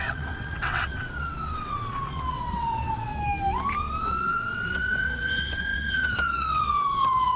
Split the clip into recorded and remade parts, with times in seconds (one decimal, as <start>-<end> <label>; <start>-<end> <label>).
0.0-3.1 remade; 3.1-4.0 recorded; 4.0-7.4 remade

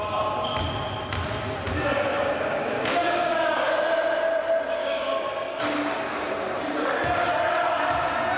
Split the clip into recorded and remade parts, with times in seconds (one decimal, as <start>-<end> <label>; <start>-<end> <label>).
0.0-2.1 recorded; 2.1-3.7 remade; 3.7-4.8 recorded; 4.8-6.0 remade; 6.0-8.4 recorded

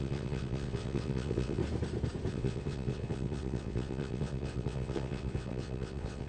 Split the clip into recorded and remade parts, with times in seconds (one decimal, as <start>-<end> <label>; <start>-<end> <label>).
0.0-1.6 remade; 1.6-2.3 recorded; 2.3-6.3 remade